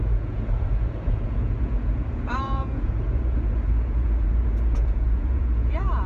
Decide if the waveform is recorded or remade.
remade